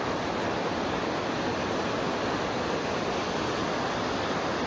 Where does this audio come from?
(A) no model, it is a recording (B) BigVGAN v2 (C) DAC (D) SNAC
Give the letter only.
A